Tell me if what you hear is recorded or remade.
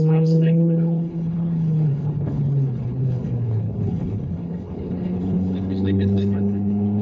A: remade